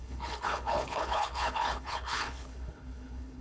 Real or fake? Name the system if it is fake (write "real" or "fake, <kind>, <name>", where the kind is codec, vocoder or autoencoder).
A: fake, codec, HILCodec